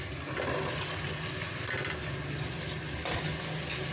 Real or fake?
real